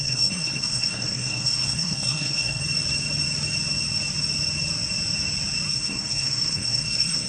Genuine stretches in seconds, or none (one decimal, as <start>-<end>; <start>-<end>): 2.6-5.7